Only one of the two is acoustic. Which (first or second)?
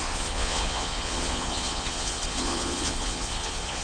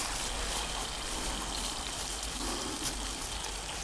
second